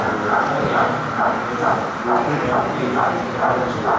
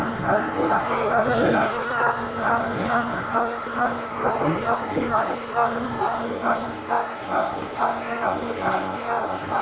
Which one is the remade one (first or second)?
second